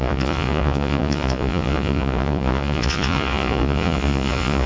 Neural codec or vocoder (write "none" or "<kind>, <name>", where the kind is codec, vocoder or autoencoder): vocoder, Vocos